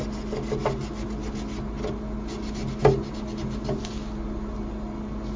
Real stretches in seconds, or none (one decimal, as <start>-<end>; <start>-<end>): 0.0-5.4